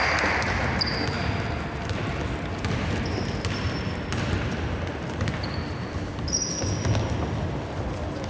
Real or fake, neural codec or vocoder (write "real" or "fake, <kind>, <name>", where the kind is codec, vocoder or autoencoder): real